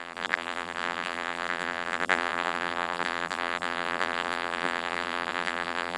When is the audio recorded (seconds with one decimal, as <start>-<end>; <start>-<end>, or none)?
none